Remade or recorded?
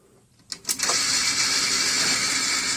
recorded